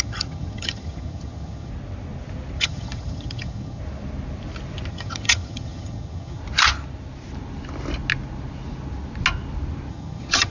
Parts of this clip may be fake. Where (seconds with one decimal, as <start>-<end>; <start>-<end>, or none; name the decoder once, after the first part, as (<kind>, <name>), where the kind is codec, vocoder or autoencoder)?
0.0-1.7 (vocoder, HiFi-GAN); 2.6-3.8; 4.9-6.4; 9.9-10.5